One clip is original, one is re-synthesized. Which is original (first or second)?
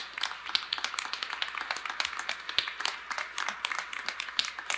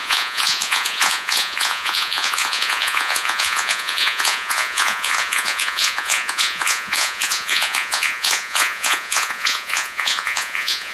first